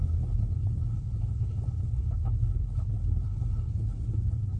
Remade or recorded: remade